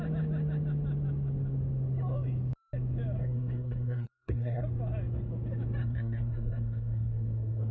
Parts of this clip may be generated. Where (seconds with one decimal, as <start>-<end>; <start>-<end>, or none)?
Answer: 3.2-4.6; 5.8-7.7